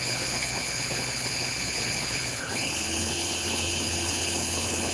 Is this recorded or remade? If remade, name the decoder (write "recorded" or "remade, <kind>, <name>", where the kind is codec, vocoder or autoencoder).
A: remade, codec, HILCodec